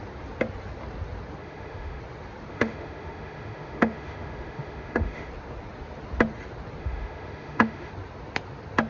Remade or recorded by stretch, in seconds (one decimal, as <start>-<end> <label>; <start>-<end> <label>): 0.0-1.4 recorded; 1.4-2.0 remade; 2.0-2.5 recorded; 2.5-5.3 remade; 5.3-6.8 recorded; 6.8-7.9 remade; 7.9-8.9 recorded